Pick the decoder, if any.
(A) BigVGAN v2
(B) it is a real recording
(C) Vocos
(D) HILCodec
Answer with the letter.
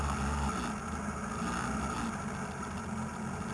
B